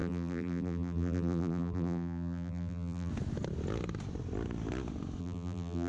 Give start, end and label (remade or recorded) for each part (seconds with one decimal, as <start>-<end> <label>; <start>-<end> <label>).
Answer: 0.0-3.1 remade; 3.1-5.2 recorded; 5.2-5.9 remade